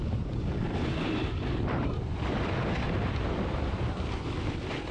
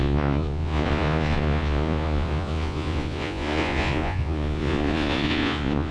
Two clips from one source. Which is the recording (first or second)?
first